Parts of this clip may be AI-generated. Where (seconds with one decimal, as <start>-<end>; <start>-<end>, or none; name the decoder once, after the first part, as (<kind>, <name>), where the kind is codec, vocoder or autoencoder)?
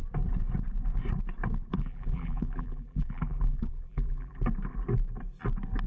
1.7-4.4 (vocoder, BigVGAN v2)